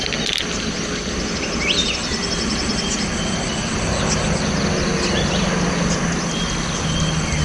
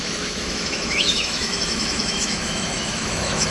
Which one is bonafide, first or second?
first